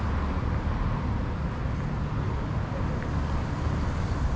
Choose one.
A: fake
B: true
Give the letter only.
B